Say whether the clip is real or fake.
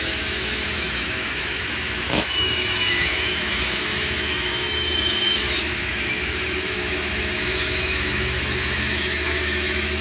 fake